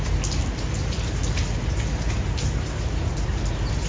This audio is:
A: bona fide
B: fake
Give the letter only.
A